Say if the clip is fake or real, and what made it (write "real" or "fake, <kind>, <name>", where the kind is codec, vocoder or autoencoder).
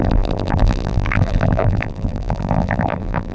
fake, vocoder, BigVGAN v2